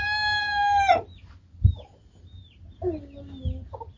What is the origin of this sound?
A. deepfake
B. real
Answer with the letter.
B